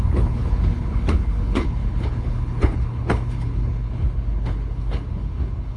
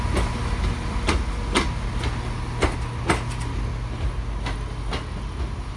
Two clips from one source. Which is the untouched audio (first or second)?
second